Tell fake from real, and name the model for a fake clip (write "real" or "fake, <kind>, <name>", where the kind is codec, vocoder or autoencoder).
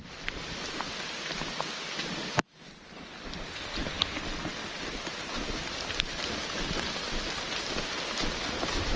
real